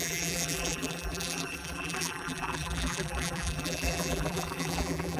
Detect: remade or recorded remade